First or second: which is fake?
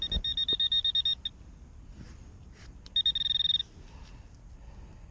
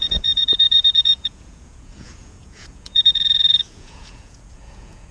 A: second